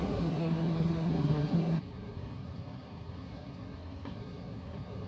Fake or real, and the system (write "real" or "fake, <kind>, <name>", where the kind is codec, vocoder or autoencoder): fake, codec, SNAC